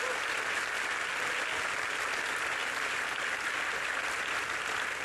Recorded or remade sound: recorded